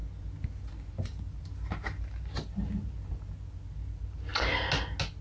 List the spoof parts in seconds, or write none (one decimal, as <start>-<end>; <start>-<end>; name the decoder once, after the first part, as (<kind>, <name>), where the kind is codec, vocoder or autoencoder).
none